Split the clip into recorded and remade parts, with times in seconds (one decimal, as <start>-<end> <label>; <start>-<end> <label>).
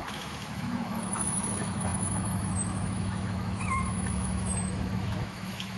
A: 0.0-5.8 remade